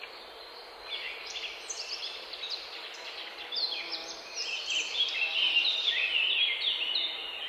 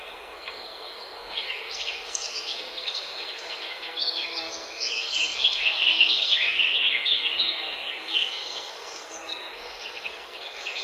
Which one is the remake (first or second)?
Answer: second